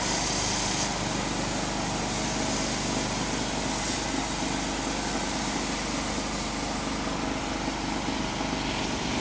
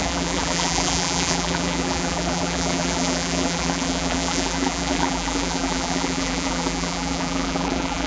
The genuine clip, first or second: first